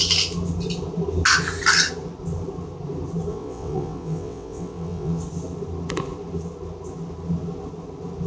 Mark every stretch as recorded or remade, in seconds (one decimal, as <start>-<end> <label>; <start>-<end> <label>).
0.0-3.3 recorded; 3.3-5.2 remade; 5.2-8.3 recorded